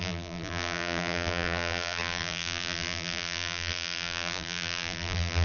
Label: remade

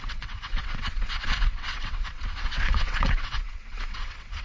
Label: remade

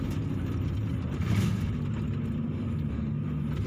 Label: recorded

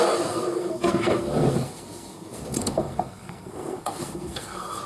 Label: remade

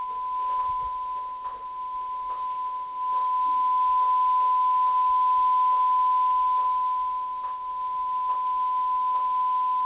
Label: recorded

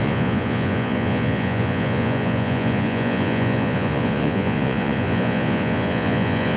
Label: remade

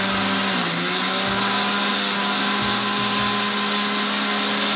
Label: recorded